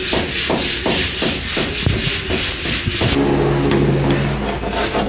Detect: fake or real real